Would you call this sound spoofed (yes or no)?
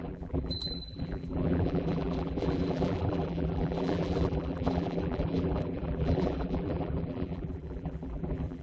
yes